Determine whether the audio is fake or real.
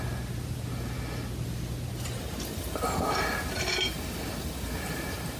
real